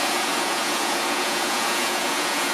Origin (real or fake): fake